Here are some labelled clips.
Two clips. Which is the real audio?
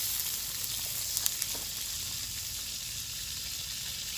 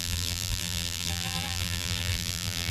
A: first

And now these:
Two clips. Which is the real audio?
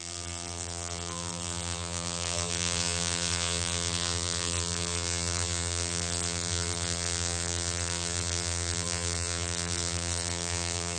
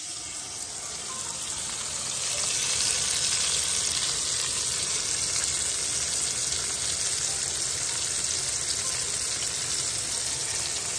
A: second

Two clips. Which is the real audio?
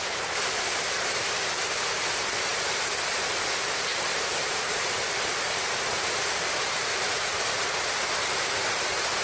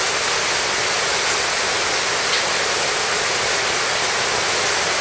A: second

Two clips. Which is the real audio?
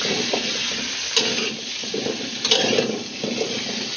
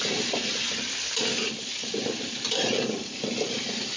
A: first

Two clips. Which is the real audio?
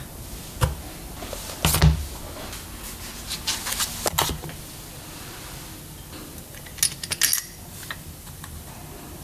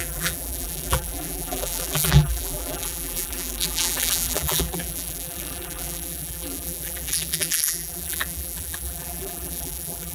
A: first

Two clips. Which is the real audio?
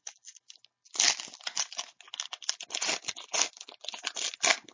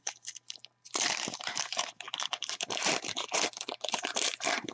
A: first